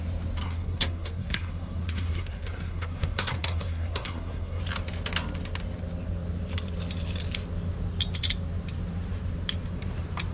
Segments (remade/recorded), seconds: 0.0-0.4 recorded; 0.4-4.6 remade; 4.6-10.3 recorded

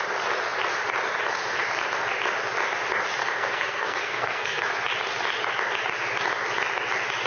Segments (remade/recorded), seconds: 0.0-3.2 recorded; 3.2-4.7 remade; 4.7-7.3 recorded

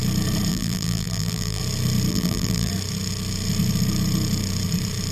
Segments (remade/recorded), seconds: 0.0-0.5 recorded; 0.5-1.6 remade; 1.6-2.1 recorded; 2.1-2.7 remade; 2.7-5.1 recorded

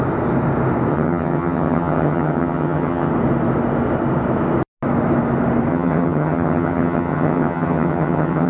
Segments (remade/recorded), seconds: 0.0-0.9 recorded; 0.9-3.1 remade; 3.1-5.7 recorded; 5.7-8.5 remade

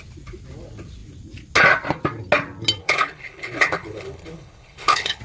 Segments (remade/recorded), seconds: 0.0-2.8 recorded; 2.8-5.2 remade

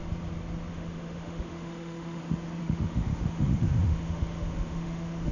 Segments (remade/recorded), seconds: 0.0-0.7 recorded; 0.7-2.2 remade; 2.2-2.6 recorded; 2.6-5.3 remade

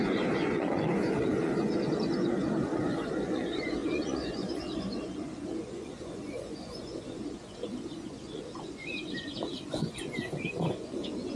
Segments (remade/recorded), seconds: 0.0-11.4 remade

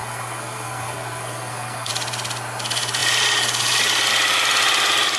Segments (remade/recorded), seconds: 0.0-1.9 remade; 1.9-5.2 recorded